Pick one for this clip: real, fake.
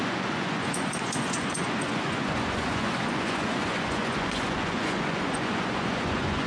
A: fake